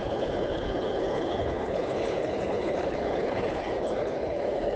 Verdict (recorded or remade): remade